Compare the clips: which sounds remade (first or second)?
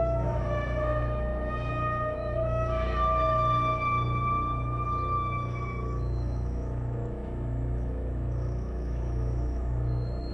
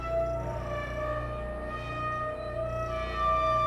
first